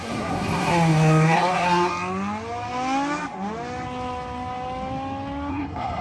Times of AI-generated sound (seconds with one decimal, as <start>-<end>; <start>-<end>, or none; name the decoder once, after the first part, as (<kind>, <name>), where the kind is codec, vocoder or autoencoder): 0.0-1.9 (codec, SNAC); 5.5-6.0